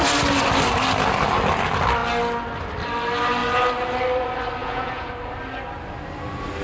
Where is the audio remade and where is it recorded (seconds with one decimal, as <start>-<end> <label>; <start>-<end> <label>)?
0.0-4.6 recorded; 4.6-5.1 remade; 5.1-6.6 recorded